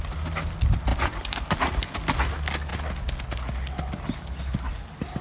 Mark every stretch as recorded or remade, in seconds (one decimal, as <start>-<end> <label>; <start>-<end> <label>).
0.0-5.2 recorded